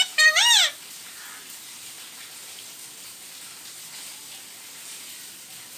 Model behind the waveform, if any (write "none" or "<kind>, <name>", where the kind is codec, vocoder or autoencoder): none